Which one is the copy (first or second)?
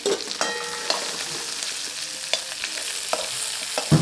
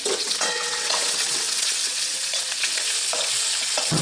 second